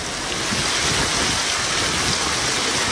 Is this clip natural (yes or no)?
yes